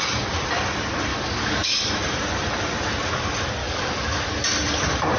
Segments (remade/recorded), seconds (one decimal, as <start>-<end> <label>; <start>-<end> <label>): 0.0-1.1 recorded; 1.1-1.9 remade; 1.9-3.6 recorded; 3.6-4.3 remade; 4.3-5.2 recorded